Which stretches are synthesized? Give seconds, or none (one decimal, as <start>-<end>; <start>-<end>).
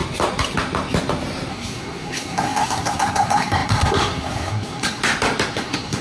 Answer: 1.5-5.0; 5.5-6.0